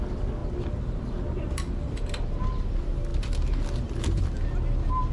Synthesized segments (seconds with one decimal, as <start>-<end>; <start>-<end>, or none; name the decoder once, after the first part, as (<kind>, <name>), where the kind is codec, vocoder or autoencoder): none